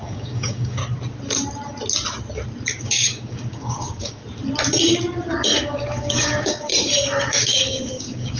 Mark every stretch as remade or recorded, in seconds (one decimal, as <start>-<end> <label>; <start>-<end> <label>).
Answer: 0.0-0.8 remade; 0.8-2.8 recorded; 2.8-4.2 remade; 4.2-5.6 recorded; 5.6-6.7 remade; 6.7-7.3 recorded; 7.3-8.4 remade